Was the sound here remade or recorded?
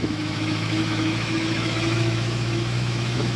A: remade